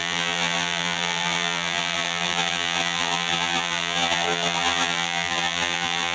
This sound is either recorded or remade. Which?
remade